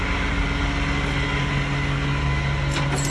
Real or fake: real